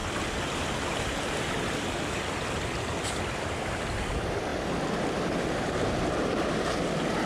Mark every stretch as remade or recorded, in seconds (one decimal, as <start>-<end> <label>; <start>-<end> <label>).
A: 0.0-7.3 recorded